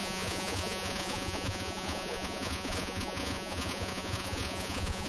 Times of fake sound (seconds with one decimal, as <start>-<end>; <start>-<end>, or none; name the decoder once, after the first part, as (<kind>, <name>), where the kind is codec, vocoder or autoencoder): 0.0-5.1 (vocoder, Vocos)